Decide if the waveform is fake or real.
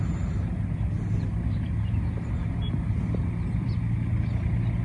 real